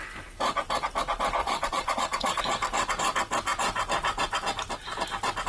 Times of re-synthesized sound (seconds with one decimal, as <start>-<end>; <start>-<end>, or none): 1.4-2.4